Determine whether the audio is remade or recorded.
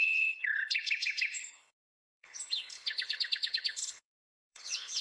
remade